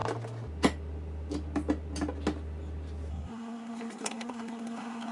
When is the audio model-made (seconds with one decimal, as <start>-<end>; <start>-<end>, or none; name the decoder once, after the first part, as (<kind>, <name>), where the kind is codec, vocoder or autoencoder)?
3.1-5.1 (codec, SNAC)